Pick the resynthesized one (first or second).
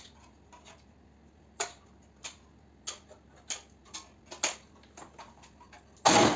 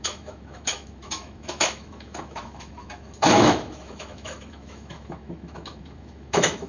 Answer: second